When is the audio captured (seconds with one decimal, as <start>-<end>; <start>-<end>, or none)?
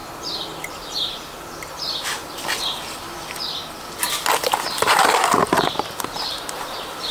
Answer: 0.0-0.7; 2.2-4.7